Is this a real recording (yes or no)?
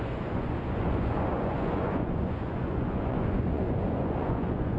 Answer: no